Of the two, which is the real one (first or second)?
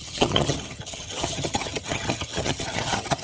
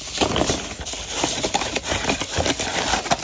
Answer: second